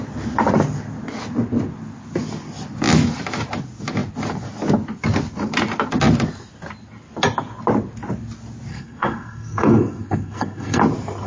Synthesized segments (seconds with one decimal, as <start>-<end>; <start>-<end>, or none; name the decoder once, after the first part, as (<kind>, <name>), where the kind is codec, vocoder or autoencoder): 8.7-10.8 (codec, SNAC)